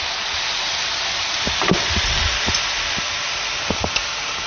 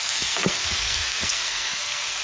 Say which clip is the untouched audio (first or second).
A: first